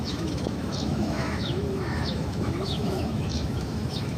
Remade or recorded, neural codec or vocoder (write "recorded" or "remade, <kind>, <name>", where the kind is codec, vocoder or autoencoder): remade, autoencoder, DAC-VAE